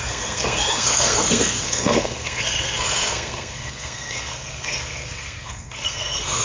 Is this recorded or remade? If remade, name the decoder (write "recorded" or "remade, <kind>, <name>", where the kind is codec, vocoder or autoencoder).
remade, codec, SNAC